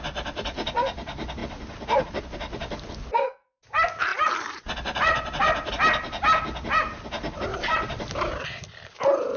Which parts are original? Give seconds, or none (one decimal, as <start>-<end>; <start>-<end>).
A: 0.0-7.5; 8.1-9.4